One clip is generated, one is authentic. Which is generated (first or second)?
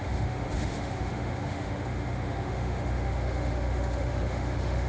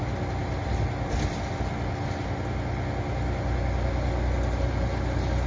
first